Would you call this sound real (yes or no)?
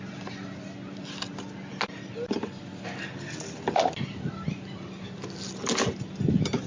yes